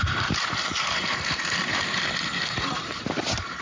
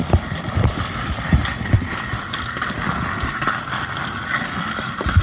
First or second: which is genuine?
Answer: second